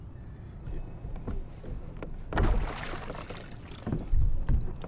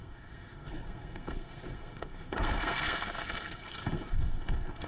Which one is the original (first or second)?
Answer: first